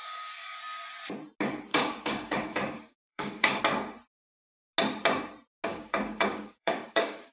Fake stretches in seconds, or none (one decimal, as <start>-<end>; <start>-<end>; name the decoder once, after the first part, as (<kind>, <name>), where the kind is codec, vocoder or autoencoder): 0.0-0.6 (codec, DAC); 1.7-3.6; 5.7-7.3